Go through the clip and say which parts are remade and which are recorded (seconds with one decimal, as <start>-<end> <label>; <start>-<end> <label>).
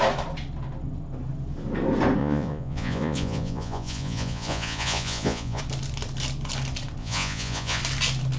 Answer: 0.0-2.2 recorded; 2.2-5.6 remade; 5.6-7.0 recorded; 7.0-7.8 remade; 7.8-8.4 recorded